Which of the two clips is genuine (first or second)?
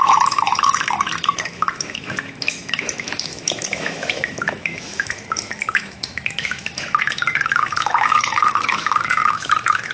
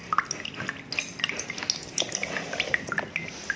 second